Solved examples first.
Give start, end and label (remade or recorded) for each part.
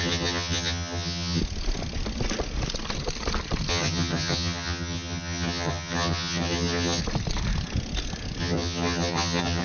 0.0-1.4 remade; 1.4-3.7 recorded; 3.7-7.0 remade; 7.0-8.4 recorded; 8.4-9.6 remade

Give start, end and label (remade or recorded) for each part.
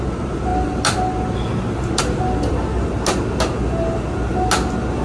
0.0-5.0 recorded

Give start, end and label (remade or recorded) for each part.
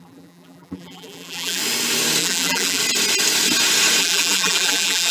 0.0-1.6 remade; 1.6-2.2 recorded; 2.2-2.8 remade; 2.8-4.0 recorded; 4.0-5.1 remade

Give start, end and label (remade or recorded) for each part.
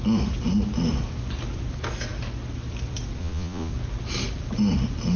0.0-3.2 recorded; 3.2-3.7 remade; 3.7-5.2 recorded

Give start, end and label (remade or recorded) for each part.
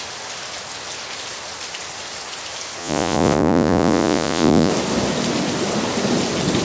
0.0-2.8 recorded; 2.8-4.7 remade; 4.7-6.6 recorded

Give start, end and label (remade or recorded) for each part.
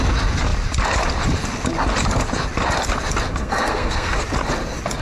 0.0-3.4 recorded; 3.4-4.2 remade; 4.2-5.0 recorded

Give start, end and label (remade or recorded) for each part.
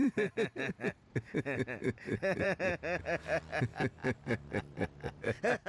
0.0-1.1 remade; 1.1-1.8 recorded; 1.8-3.0 remade; 3.0-5.7 recorded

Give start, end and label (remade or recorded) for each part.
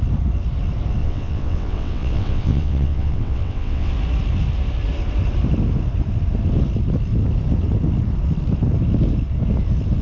0.0-1.0 recorded; 1.0-3.9 remade; 3.9-10.0 recorded